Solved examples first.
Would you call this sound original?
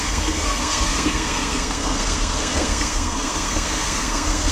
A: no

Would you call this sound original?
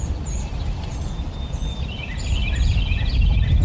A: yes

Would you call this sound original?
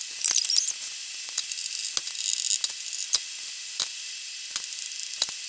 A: yes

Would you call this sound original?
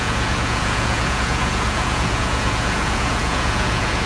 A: no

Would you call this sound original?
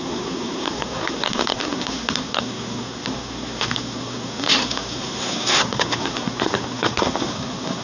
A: no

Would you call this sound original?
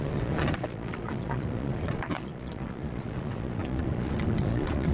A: no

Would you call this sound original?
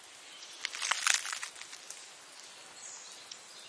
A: yes